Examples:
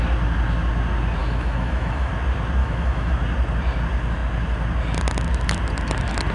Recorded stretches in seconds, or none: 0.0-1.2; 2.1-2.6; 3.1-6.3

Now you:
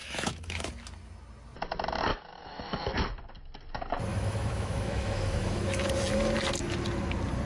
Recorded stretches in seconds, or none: 0.6-2.1; 2.8-4.1; 5.8-7.5